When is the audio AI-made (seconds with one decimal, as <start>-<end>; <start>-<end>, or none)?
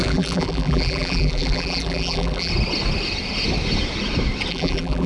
0.0-2.5; 4.5-5.1